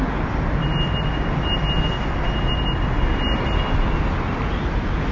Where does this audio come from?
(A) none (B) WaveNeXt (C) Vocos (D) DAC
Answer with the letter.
A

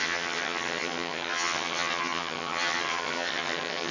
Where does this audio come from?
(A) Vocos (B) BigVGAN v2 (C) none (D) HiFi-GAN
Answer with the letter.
D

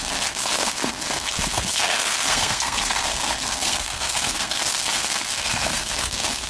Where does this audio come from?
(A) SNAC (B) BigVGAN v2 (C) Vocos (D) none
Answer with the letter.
A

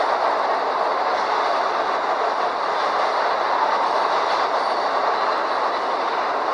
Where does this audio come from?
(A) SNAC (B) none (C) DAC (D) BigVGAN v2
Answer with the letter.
B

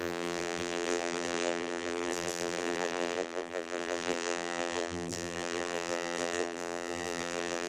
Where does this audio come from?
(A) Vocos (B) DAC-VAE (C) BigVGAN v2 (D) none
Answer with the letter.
C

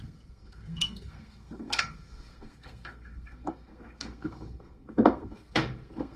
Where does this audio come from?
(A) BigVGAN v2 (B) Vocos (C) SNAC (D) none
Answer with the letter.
C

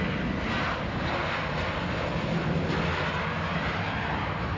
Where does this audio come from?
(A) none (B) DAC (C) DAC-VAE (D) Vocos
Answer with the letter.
A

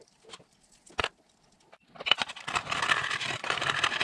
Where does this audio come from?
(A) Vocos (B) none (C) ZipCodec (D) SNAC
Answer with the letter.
B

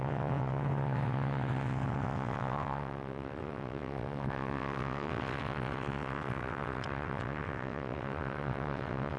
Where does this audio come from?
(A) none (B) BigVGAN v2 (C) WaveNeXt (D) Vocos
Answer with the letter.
C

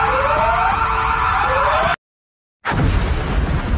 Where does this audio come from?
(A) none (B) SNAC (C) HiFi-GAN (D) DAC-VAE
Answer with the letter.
A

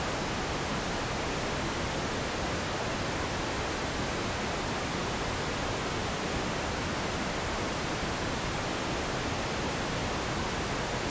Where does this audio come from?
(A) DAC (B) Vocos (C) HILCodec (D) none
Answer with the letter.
D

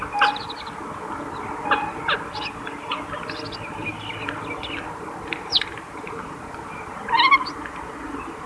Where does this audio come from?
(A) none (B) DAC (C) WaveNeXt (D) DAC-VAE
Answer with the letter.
A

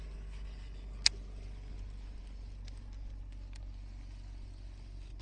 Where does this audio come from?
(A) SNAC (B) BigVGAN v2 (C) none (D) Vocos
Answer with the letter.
C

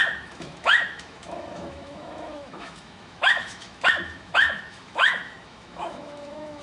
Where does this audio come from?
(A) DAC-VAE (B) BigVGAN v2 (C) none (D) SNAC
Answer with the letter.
A